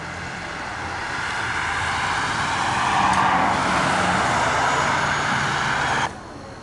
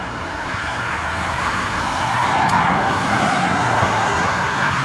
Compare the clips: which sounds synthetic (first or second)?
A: second